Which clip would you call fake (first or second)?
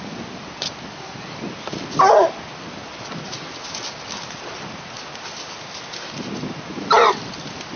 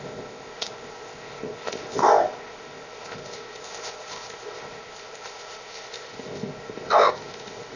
second